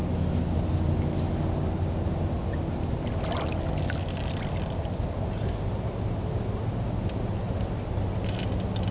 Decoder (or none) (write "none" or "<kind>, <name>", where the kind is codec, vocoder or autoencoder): none